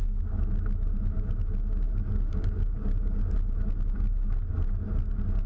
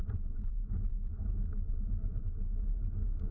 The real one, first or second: first